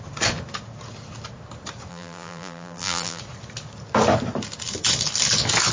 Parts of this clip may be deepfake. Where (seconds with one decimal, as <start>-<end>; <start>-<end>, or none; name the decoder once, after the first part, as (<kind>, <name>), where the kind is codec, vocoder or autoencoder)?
1.9-3.2 (vocoder, BigVGAN v2)